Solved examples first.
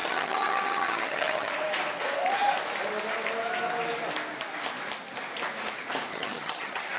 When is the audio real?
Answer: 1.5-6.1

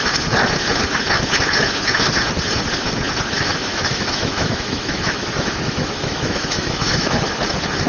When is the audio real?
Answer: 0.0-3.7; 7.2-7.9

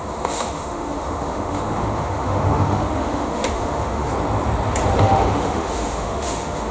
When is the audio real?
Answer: 4.1-5.0

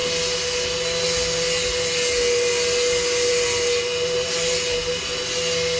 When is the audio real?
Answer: 0.0-5.8

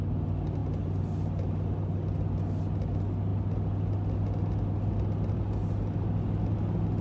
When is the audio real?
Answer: 0.0-7.0